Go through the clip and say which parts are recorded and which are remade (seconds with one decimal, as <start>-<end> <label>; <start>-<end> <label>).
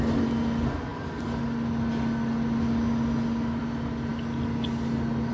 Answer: 0.0-5.3 recorded